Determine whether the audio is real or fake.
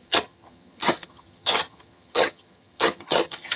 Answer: fake